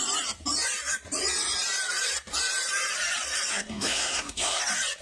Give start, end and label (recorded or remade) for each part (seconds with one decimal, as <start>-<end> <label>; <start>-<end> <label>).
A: 0.0-3.5 recorded; 3.5-4.6 remade; 4.6-5.0 recorded